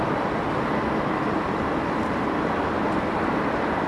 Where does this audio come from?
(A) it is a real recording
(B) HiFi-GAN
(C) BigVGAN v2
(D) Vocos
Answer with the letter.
A